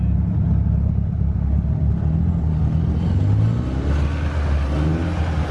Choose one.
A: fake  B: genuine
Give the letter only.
B